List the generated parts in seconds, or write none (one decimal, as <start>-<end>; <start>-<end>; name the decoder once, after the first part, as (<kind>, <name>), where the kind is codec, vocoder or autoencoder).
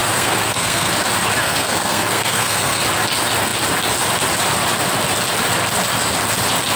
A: 0.0-0.9 (codec, SNAC); 1.4-2.8